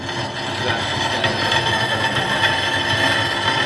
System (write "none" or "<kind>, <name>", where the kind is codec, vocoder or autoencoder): none